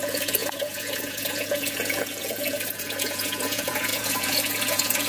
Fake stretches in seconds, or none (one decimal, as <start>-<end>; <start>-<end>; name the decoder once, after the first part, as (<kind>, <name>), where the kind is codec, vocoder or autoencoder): 0.0-5.1 (vocoder, Vocos)